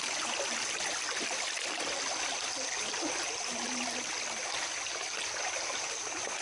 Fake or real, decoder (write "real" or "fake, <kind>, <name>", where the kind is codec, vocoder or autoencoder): real